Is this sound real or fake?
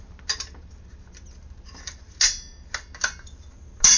real